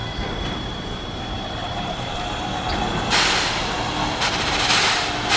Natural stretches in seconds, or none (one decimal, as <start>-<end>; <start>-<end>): 2.1-5.4